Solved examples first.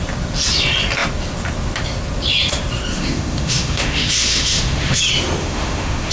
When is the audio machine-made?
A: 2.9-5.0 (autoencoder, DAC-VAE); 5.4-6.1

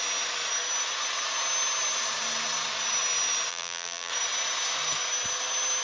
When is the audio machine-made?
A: 3.5-4.1 (vocoder, BigVGAN v2)

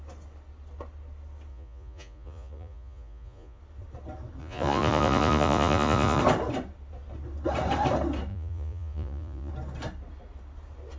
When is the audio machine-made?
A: 1.5-3.6 (vocoder, Vocos); 4.4-6.2; 8.3-9.5

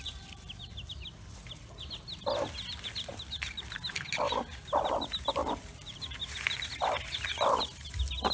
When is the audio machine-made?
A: none